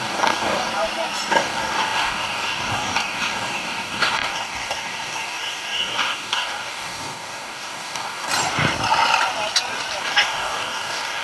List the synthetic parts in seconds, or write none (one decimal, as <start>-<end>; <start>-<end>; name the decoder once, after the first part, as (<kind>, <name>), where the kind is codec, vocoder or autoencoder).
0.0-0.7 (codec, DAC); 1.3-8.3; 10.0-11.2